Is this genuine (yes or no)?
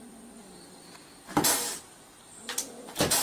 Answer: yes